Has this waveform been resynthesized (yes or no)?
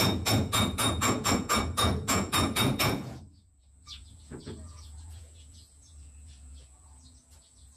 yes